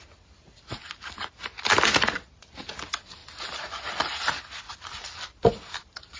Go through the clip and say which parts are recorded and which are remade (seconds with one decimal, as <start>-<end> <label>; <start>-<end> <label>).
0.0-6.2 recorded

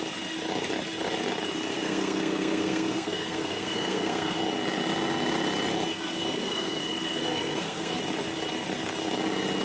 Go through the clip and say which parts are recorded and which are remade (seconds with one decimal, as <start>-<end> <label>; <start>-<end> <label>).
0.0-1.7 recorded; 1.7-4.4 remade; 4.4-5.9 recorded; 5.9-8.0 remade; 8.0-9.6 recorded

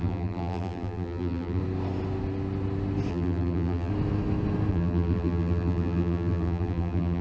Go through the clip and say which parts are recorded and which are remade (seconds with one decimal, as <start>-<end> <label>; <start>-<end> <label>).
0.0-1.6 remade; 1.6-3.1 recorded; 3.1-3.9 remade; 3.9-4.7 recorded; 4.7-7.2 remade

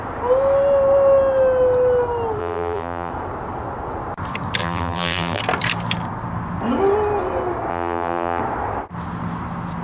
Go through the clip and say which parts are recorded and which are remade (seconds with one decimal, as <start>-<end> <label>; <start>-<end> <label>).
0.0-2.4 recorded; 2.4-3.1 remade; 3.1-4.6 recorded; 4.6-5.4 remade; 5.4-7.7 recorded; 7.7-8.4 remade; 8.4-9.8 recorded